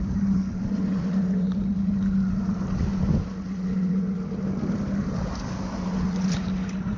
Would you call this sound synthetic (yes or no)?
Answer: no